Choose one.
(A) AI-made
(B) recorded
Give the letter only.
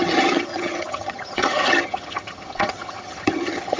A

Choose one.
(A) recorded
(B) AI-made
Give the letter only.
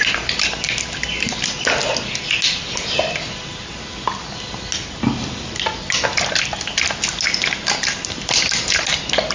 A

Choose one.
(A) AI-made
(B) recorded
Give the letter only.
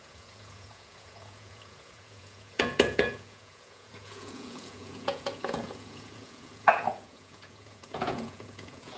A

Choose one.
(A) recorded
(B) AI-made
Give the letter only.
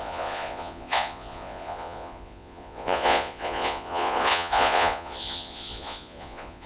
B